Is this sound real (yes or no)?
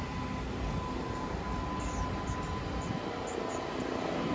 yes